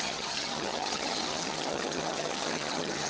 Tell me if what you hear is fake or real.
fake